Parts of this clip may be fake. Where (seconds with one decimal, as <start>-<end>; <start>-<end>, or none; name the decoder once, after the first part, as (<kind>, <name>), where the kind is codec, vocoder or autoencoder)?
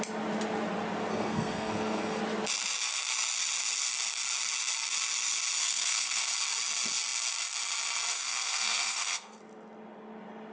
1.1-2.2 (codec, SNAC); 5.6-6.2; 8.1-9.4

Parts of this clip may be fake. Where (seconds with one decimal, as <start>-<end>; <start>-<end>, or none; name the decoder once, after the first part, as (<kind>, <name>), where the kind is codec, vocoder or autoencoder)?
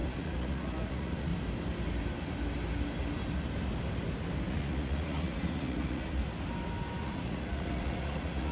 0.0-1.3 (vocoder, Vocos); 4.5-6.2; 7.0-8.5